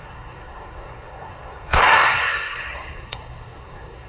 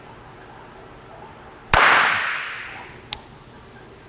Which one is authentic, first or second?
second